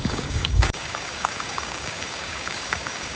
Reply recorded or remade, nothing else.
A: remade